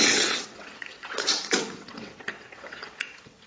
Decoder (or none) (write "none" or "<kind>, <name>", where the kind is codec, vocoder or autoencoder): vocoder, WaveNeXt